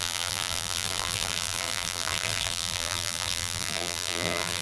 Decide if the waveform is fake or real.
fake